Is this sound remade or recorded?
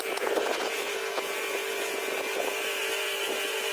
remade